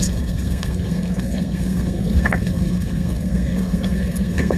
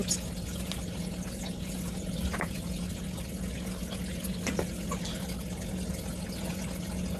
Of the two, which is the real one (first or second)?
second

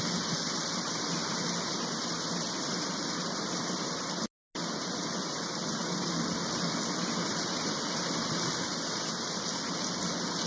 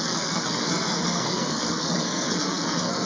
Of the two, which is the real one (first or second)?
first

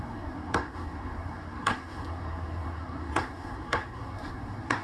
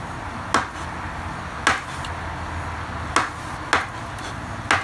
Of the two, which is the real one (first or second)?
second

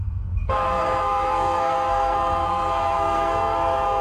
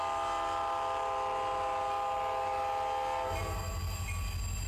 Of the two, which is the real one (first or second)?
second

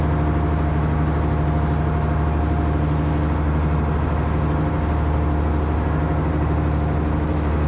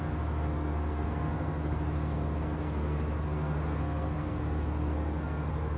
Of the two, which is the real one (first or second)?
first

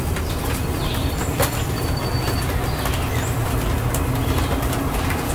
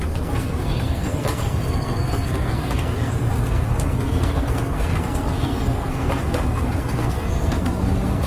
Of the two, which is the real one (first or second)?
first